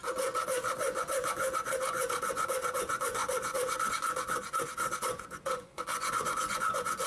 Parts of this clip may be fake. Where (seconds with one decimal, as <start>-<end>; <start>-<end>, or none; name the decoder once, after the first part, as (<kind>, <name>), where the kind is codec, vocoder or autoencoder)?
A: 0.0-7.1 (vocoder, Vocos)